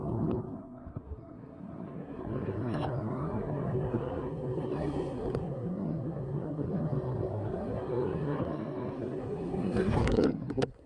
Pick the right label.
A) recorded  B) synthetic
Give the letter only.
B